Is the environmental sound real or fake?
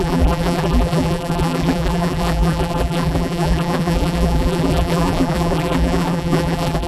fake